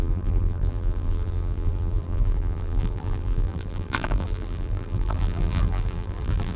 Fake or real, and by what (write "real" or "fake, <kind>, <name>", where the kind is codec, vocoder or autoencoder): fake, vocoder, BigVGAN v2